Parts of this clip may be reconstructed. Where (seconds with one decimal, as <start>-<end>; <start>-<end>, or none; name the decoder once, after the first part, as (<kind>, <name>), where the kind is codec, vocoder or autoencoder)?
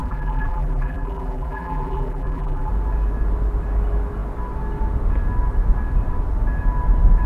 0.0-2.7 (vocoder, BigVGAN v2)